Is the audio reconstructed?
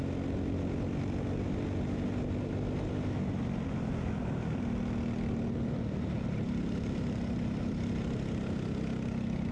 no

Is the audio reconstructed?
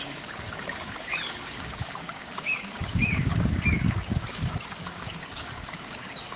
yes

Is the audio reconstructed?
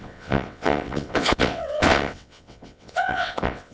yes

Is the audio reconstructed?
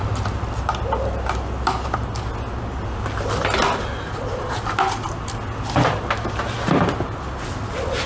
no